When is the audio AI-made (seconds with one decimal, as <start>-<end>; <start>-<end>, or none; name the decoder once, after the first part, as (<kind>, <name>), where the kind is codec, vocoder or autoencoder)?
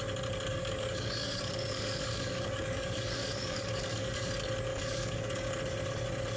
0.5-4.3 (codec, DAC); 4.7-5.5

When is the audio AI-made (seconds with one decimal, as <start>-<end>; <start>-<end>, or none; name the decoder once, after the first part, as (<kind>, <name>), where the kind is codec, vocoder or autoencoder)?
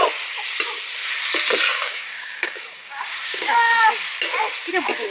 1.7-3.8 (codec, DAC)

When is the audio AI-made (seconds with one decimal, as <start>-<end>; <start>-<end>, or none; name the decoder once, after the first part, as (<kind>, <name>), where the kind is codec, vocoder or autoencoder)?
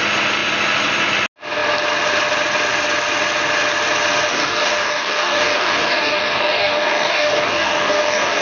4.3-8.4 (codec, DAC)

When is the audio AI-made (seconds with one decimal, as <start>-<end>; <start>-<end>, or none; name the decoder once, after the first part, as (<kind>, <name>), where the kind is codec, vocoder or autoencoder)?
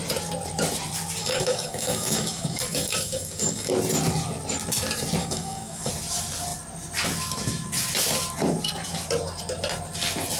1.2-3.7 (codec, DAC); 5.2-5.9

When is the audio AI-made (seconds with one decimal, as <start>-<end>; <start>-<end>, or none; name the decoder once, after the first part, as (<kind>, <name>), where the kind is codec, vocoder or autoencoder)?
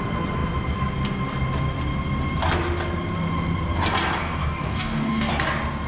4.4-5.3 (codec, DAC)